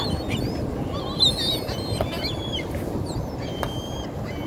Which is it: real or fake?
real